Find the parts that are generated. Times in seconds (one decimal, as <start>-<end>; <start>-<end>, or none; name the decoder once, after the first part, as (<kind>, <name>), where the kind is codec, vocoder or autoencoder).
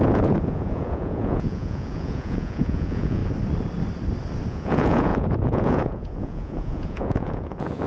0.0-3.2 (vocoder, Vocos); 4.5-7.9